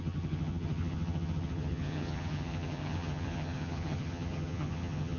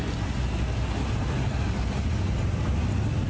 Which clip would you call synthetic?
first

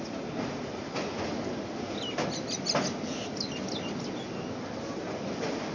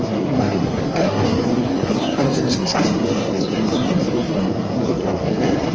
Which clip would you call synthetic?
second